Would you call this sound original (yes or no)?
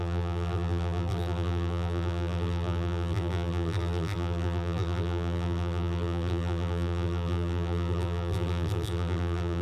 no